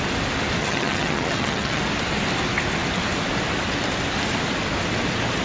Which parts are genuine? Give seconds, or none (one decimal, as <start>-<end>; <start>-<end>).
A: 0.0-0.6; 1.8-5.4